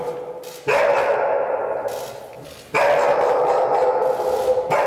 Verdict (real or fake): real